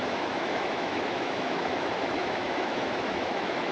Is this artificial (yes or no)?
yes